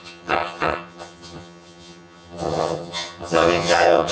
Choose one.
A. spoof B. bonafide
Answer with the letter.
A